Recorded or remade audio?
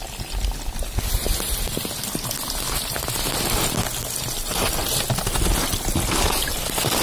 recorded